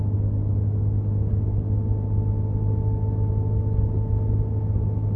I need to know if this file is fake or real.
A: real